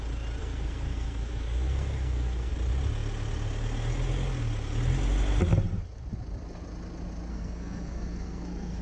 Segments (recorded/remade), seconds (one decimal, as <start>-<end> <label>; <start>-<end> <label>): 0.0-0.4 recorded; 0.4-2.5 remade; 2.5-7.3 recorded; 7.3-8.8 remade